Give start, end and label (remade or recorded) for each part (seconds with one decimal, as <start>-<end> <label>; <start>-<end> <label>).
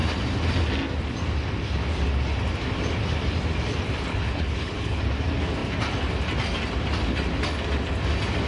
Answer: 0.0-4.1 recorded; 4.1-5.0 remade; 5.0-8.5 recorded